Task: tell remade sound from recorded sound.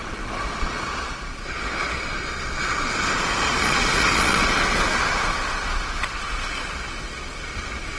remade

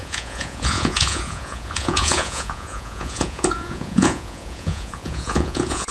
remade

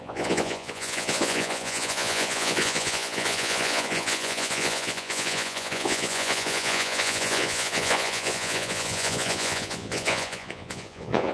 remade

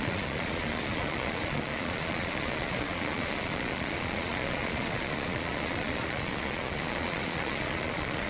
remade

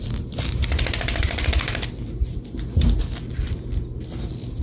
recorded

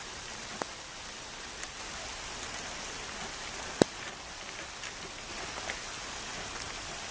recorded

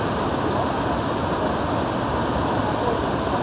recorded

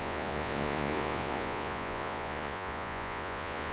remade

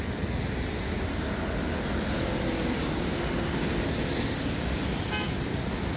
recorded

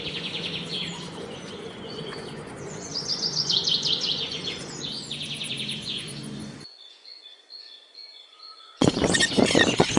remade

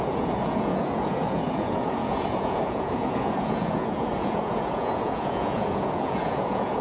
remade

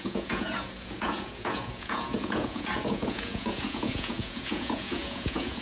remade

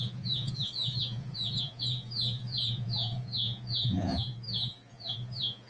remade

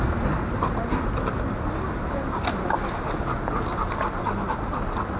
recorded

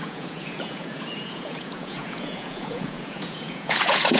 remade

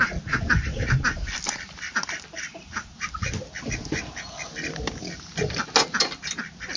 recorded